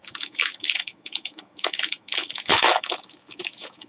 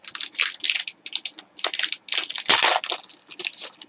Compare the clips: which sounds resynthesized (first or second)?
first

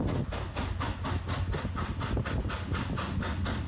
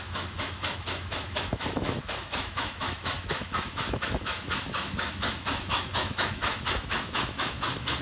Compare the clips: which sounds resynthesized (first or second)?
second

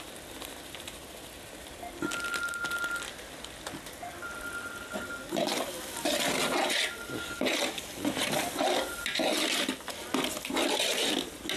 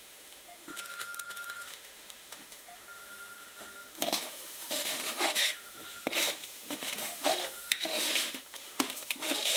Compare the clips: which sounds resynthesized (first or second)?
second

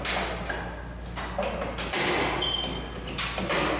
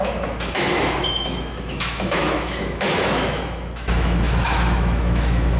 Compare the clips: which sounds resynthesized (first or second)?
second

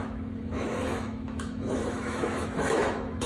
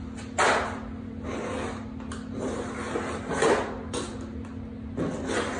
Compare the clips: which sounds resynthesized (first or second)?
first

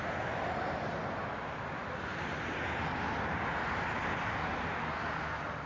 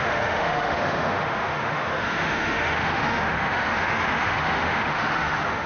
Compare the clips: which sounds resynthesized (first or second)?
second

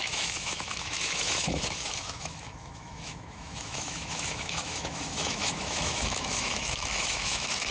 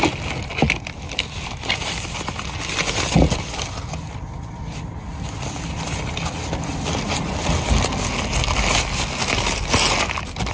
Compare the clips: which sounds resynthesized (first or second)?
first